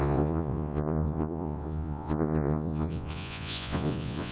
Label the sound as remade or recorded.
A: remade